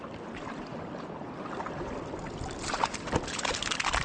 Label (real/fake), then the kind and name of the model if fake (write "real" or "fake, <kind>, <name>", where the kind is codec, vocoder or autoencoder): real